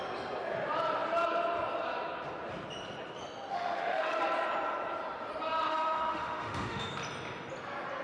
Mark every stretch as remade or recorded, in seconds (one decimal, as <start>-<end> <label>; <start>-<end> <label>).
0.0-3.5 recorded; 3.5-4.2 remade; 4.2-5.7 recorded; 5.7-6.9 remade; 6.9-8.0 recorded